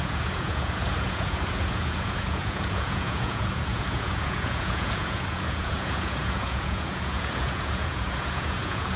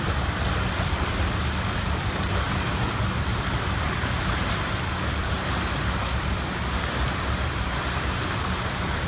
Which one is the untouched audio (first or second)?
second